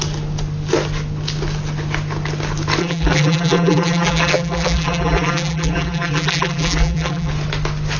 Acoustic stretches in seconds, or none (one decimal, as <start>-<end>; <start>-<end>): 0.0-2.8; 7.3-8.0